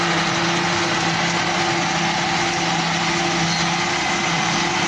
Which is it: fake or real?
real